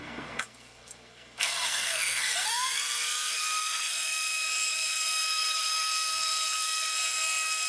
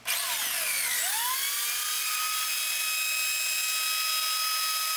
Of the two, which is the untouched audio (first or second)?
second